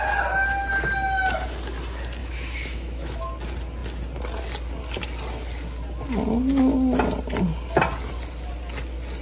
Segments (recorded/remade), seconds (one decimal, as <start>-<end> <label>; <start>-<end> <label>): 0.0-2.2 recorded; 2.2-3.2 remade; 3.2-9.2 recorded